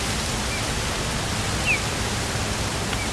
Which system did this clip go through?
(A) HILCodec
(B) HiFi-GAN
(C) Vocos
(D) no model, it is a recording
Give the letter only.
D